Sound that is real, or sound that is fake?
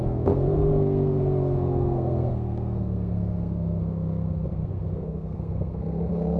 fake